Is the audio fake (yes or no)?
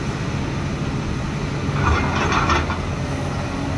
no